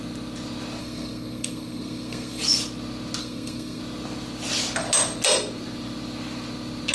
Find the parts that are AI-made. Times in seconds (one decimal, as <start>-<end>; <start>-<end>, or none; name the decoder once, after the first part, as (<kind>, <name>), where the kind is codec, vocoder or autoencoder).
0.8-2.4 (codec, SNAC); 3.2-3.8